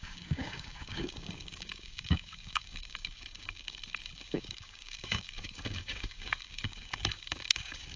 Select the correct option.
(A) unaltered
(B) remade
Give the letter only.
B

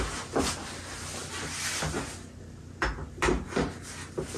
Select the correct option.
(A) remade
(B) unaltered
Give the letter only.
B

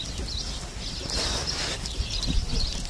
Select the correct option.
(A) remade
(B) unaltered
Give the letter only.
B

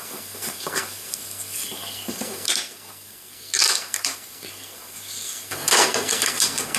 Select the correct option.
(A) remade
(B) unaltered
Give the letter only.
A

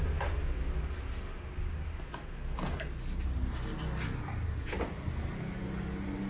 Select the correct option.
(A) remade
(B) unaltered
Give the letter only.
B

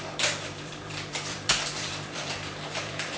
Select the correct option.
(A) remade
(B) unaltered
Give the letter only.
A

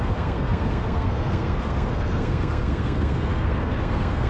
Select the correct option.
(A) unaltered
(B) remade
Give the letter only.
B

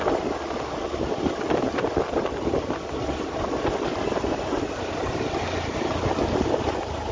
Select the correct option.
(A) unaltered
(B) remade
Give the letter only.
A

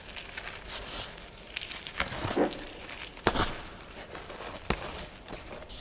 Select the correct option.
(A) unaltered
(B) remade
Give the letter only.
A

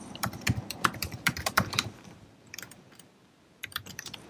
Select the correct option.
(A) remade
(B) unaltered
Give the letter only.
A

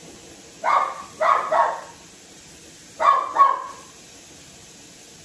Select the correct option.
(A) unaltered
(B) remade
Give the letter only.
A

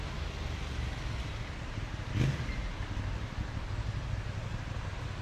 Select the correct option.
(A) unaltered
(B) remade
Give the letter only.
A